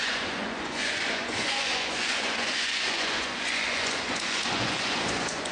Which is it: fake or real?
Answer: fake